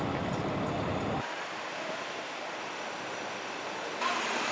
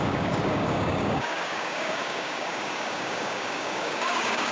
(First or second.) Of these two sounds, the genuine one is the first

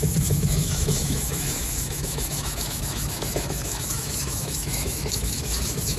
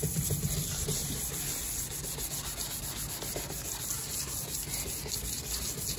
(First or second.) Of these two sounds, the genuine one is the second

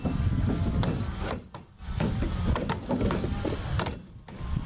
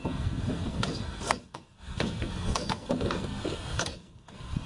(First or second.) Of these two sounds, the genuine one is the first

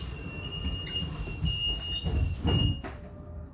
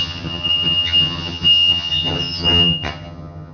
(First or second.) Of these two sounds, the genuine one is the first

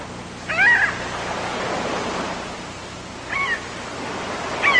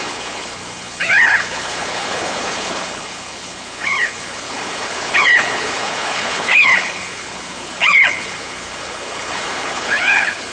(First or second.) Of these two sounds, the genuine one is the first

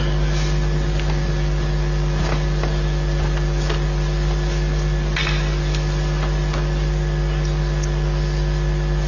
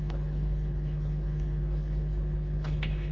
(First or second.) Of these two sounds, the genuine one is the first